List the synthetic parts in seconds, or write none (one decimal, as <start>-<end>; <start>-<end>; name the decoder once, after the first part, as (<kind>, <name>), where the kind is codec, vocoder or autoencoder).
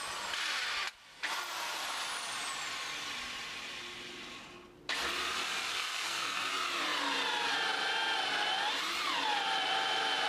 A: 5.7-6.5 (codec, SNAC)